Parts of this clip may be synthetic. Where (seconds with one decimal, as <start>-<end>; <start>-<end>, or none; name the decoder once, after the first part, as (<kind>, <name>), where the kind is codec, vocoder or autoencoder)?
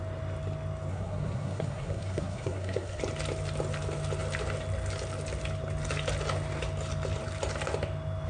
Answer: 0.9-3.0 (codec, SNAC)